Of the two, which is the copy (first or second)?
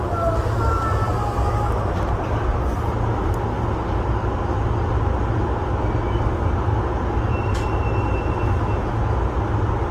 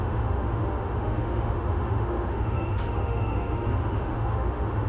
second